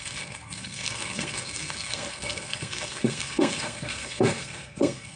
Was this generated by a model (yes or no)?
yes